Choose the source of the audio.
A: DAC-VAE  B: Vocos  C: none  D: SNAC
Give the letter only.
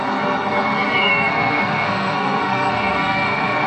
D